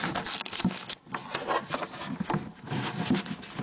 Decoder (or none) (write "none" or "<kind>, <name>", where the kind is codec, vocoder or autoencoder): none